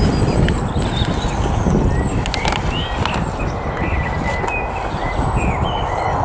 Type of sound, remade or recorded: recorded